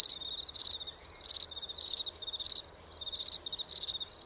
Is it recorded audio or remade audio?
recorded